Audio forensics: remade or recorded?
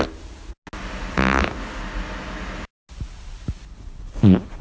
recorded